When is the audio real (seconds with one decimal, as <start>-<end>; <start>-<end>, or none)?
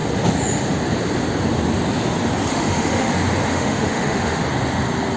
0.0-2.5; 3.1-3.5; 4.4-5.2